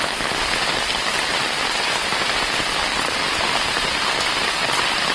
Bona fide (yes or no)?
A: yes